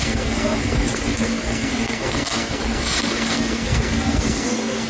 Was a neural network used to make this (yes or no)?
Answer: yes